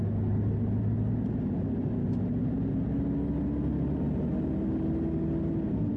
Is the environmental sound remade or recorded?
recorded